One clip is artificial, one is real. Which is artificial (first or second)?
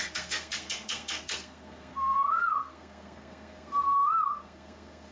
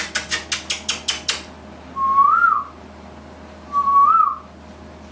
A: first